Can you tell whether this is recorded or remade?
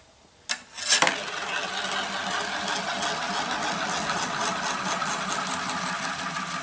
recorded